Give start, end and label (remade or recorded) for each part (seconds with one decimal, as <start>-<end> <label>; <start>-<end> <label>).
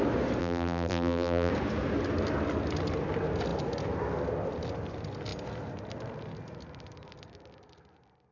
0.0-0.4 recorded; 0.4-1.5 remade; 1.5-8.3 recorded